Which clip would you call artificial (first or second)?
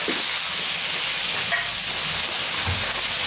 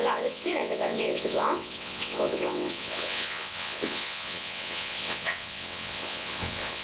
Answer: second